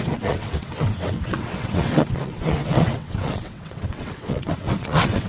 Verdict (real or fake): fake